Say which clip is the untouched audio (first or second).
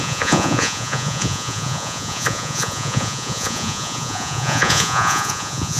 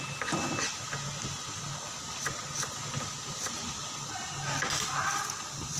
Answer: second